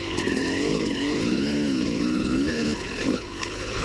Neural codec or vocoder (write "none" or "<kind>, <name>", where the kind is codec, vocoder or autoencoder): codec, HILCodec